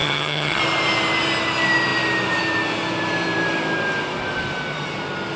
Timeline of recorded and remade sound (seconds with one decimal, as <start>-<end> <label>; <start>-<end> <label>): 0.0-0.6 remade; 0.6-5.4 recorded